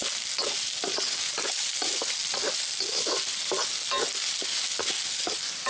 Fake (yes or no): no